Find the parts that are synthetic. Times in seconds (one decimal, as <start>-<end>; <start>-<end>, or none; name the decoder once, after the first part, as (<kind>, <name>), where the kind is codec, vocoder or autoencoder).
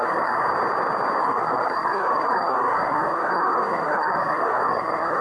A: 0.0-0.5 (codec, SNAC); 1.2-5.2